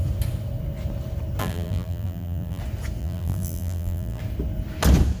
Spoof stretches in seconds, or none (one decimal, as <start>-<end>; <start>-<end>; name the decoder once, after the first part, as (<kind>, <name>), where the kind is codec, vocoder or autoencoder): 1.4-2.6 (vocoder, BigVGAN v2); 3.0-4.2